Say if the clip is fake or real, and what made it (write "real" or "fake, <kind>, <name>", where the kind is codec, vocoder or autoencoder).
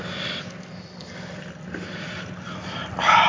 real